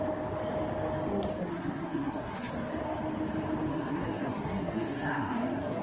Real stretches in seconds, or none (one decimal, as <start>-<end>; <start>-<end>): 0.0-1.5; 2.5-3.7